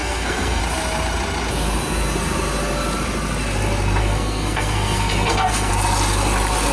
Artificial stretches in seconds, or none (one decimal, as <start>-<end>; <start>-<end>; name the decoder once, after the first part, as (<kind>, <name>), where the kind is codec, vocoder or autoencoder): 0.0-0.6 (codec, SNAC); 4.0-5.7